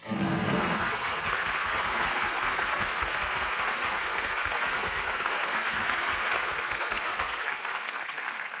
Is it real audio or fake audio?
fake